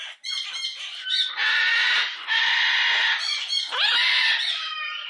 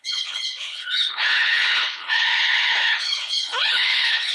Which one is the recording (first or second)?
first